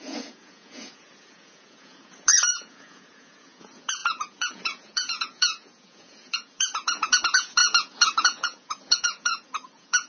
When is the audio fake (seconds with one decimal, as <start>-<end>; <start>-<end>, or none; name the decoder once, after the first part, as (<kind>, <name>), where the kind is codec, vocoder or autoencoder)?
0.0-10.1 (vocoder, Vocos)